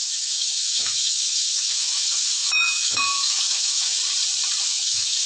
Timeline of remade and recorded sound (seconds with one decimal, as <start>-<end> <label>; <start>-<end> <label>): 0.0-4.0 remade; 4.0-4.6 recorded; 4.6-5.3 remade